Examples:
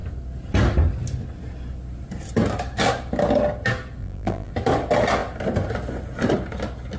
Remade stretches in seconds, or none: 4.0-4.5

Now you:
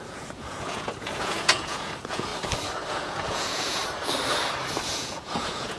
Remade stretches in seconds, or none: 0.0-2.3; 2.9-3.8; 4.9-5.8

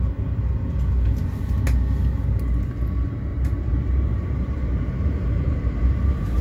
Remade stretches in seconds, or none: 3.3-6.4

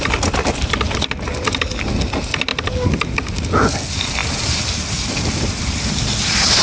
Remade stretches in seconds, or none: none

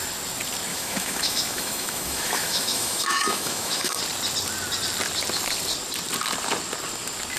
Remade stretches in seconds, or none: 0.7-4.0

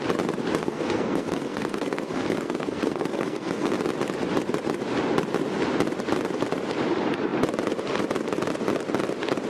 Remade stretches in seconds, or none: 0.6-3.7

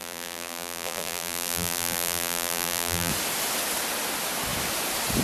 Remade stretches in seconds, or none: 0.0-3.1

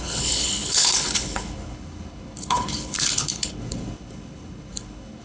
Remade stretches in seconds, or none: 0.0-5.2